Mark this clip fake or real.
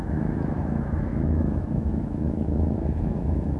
fake